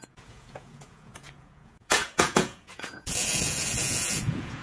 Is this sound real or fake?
fake